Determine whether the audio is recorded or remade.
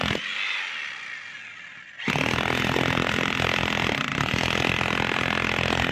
recorded